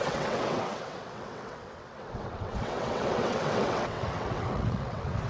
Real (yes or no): no